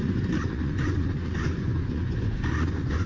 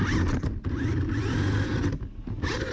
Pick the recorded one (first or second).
second